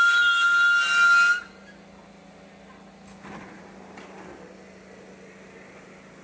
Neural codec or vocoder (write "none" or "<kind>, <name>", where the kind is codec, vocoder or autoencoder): none